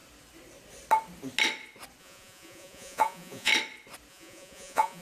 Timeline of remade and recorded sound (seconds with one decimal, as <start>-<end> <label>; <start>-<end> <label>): 0.0-2.0 recorded; 2.0-3.5 remade; 3.5-4.1 recorded; 4.1-5.0 remade